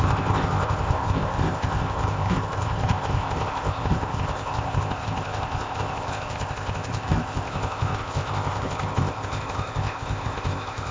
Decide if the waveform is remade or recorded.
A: remade